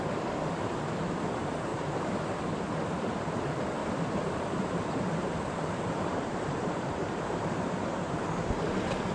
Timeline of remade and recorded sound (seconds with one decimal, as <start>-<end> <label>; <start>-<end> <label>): 0.0-1.7 recorded; 1.7-2.2 remade; 2.2-3.8 recorded; 3.8-8.6 remade; 8.6-9.1 recorded